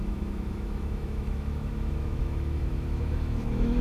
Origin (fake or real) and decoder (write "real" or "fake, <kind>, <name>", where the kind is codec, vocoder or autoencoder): fake, autoencoder, DAC-VAE